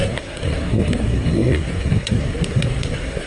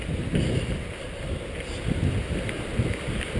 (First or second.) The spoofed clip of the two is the first